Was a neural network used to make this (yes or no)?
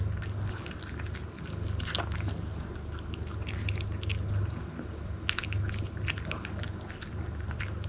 no